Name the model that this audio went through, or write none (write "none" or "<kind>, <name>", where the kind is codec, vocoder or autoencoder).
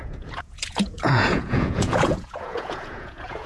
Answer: vocoder, Vocos